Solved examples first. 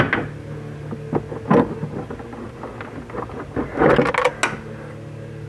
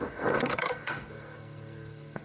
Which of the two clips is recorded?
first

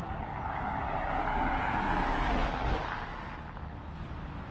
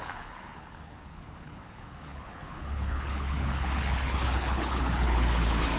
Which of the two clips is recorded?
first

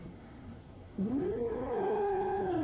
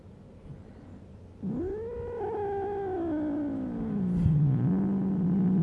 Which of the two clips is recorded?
second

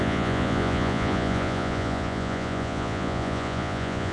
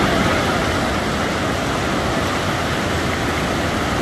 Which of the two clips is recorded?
second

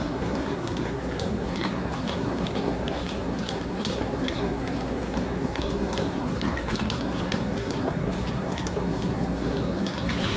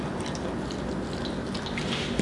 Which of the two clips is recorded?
second